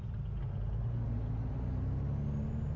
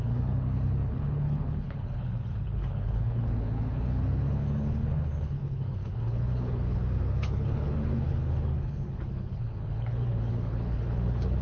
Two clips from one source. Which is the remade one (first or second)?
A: second